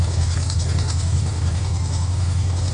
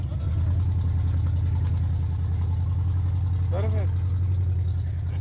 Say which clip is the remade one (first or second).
first